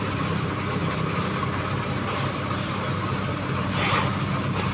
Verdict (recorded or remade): remade